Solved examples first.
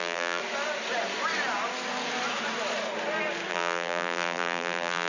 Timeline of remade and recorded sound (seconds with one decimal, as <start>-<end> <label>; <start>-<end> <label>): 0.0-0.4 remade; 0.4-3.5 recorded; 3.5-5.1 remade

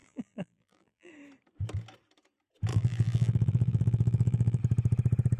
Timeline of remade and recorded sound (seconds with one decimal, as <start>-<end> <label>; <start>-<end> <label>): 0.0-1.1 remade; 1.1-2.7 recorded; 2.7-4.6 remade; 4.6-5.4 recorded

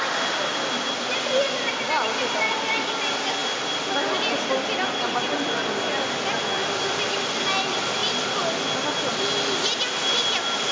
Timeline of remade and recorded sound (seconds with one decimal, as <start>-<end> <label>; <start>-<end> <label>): 0.0-10.7 recorded